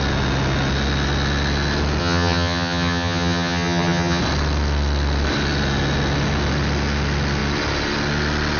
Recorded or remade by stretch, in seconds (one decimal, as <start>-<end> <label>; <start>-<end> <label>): 0.0-2.0 recorded; 2.0-4.2 remade; 4.2-8.6 recorded